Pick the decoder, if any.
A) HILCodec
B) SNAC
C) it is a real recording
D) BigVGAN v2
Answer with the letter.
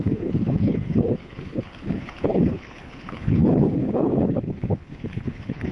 A